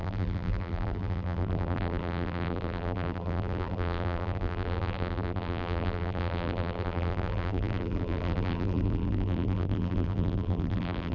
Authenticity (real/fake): fake